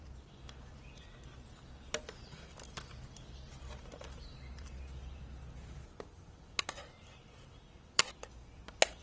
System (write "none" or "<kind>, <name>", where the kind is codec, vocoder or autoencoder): vocoder, BigVGAN v2